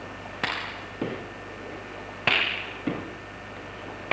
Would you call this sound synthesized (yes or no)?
no